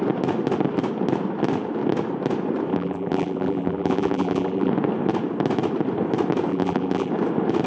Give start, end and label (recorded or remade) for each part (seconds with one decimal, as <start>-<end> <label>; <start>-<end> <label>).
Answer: 0.0-2.7 recorded; 2.7-4.7 remade; 4.7-6.5 recorded; 6.5-7.1 remade; 7.1-7.7 recorded